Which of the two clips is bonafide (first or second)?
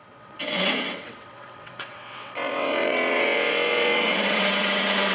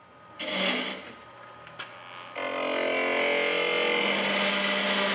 second